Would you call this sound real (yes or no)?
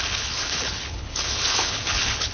no